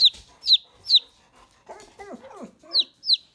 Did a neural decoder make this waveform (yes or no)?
no